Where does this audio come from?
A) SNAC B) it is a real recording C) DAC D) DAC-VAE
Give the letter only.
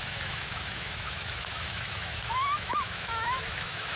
D